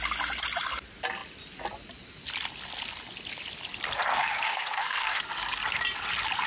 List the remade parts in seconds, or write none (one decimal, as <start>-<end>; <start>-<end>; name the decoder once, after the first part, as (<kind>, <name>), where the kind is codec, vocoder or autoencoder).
4.1-5.2 (codec, SNAC)